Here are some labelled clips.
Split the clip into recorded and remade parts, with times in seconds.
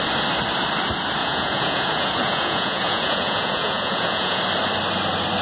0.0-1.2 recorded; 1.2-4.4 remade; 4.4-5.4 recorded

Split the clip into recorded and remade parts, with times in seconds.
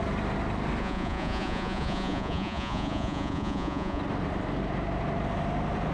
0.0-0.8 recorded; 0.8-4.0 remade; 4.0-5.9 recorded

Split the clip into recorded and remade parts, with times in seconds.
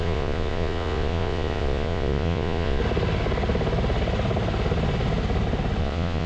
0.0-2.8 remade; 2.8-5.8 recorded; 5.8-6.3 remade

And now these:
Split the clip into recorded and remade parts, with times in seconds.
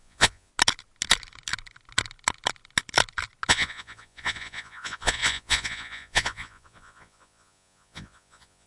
0.0-0.5 remade; 0.5-3.5 recorded; 3.5-8.7 remade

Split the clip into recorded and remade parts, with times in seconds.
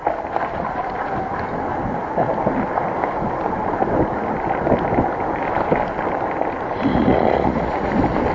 0.0-6.9 recorded; 6.9-7.9 remade; 7.9-8.3 recorded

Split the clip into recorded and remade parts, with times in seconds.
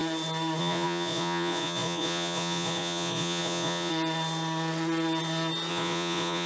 0.0-0.6 recorded; 0.6-3.9 remade; 3.9-5.7 recorded; 5.7-6.5 remade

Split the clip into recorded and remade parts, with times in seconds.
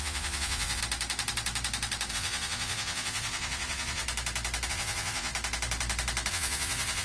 0.0-0.8 remade; 0.8-2.1 recorded; 2.1-4.0 remade; 4.0-4.7 recorded; 4.7-5.3 remade; 5.3-6.3 recorded; 6.3-7.0 remade